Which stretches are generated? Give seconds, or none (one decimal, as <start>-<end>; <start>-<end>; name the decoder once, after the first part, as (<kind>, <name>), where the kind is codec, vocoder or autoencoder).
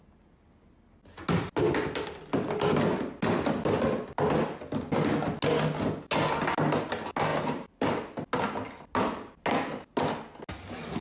none